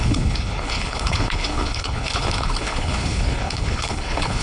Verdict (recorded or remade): remade